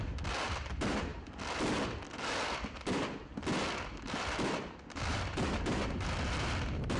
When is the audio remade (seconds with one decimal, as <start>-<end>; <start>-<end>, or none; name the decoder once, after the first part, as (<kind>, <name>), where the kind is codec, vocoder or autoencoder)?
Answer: none